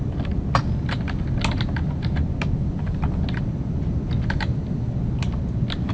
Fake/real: real